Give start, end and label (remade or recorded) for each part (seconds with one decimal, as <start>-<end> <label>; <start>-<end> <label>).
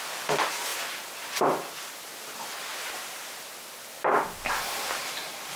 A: 0.0-5.6 recorded